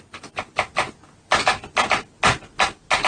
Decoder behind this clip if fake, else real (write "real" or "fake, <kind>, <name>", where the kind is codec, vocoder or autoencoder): real